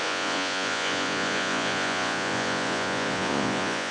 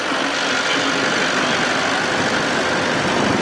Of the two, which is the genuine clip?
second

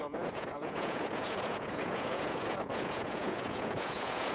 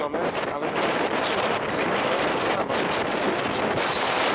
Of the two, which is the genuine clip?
second